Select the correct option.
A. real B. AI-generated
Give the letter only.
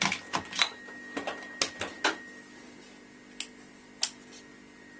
A